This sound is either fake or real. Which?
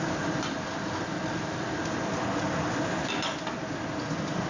fake